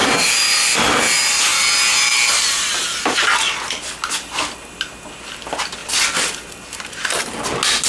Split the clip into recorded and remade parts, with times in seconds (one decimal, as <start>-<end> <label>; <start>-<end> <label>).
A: 0.0-7.9 recorded